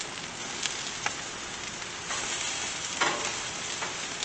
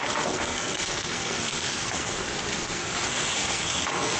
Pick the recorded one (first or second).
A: first